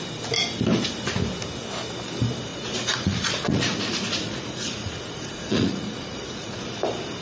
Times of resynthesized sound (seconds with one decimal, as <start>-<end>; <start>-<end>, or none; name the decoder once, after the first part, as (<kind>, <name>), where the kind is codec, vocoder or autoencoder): 2.5-6.8 (vocoder, Vocos)